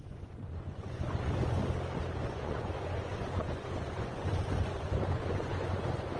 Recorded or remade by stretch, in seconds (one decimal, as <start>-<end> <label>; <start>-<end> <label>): 0.0-1.6 remade; 1.6-2.2 recorded; 2.2-6.2 remade